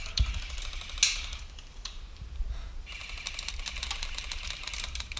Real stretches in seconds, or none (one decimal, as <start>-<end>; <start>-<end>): 0.6-1.1; 2.0-5.2